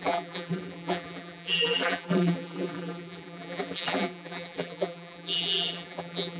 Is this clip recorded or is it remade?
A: remade